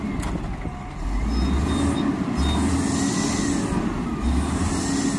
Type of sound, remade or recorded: recorded